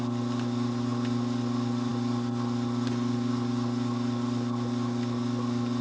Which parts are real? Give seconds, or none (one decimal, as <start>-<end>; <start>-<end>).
0.0-5.8